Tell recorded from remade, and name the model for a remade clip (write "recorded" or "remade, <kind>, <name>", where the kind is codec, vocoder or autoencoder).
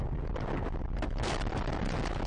recorded